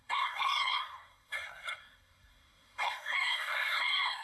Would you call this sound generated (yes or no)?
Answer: yes